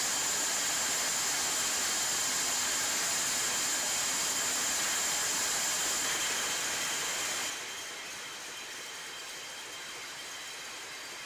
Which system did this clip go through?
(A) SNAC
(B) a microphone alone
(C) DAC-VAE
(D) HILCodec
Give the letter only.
B